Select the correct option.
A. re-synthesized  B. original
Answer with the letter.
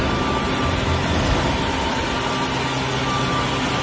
B